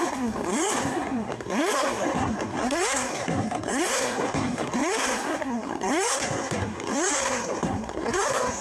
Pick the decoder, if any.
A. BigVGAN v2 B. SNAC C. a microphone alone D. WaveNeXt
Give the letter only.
B